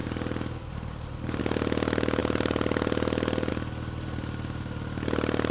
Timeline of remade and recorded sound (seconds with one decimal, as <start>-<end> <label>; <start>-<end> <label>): 0.0-1.4 remade; 1.4-5.5 recorded